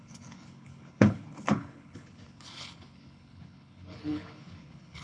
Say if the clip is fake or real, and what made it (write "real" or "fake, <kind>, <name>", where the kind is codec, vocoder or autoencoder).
fake, codec, HILCodec